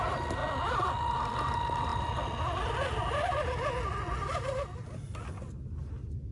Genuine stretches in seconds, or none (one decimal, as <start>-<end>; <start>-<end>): 0.0-6.3